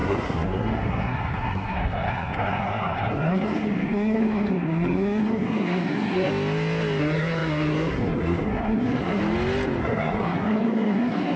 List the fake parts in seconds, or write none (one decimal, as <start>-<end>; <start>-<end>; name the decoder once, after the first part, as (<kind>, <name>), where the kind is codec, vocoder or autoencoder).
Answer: 0.0-6.3 (codec, SNAC); 7.0-9.2; 9.8-11.4